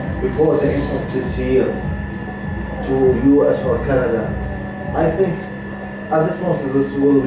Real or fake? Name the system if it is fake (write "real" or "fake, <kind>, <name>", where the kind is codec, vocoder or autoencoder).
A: real